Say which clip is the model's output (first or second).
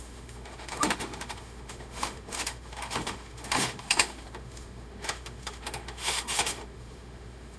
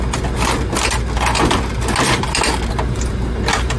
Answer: first